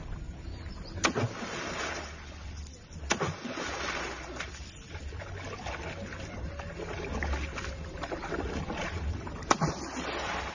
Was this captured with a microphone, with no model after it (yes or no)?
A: yes